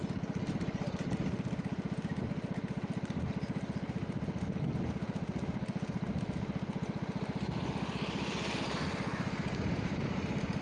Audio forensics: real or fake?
real